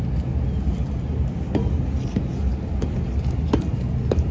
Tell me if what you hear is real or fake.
real